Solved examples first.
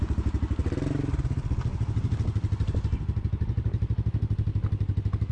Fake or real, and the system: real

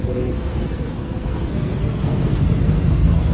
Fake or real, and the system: fake, codec, SNAC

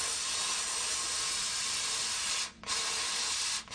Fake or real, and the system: real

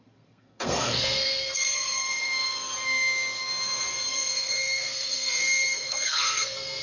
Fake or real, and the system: fake, codec, SNAC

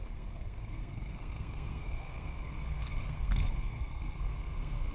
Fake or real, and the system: fake, codec, SNAC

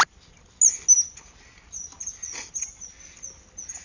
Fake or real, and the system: real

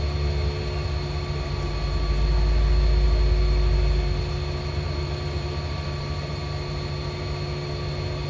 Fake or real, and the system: real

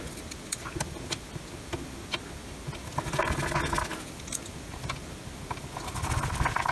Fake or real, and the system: real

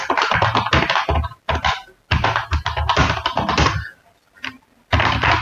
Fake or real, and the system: real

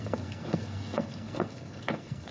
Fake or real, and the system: fake, codec, SNAC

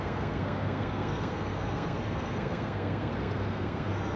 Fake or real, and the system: fake, codec, SNAC